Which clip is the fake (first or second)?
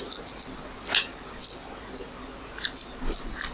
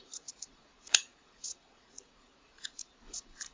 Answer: second